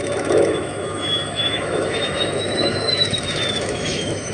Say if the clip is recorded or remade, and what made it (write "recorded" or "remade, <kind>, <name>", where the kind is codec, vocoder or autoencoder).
remade, autoencoder, DAC-VAE